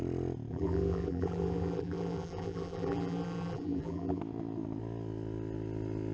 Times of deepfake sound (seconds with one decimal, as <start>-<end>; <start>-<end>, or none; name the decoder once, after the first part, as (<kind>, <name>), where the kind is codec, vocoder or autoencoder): 0.5-4.2 (vocoder, BigVGAN v2)